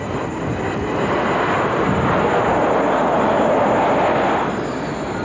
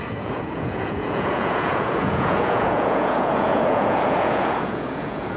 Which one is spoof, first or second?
second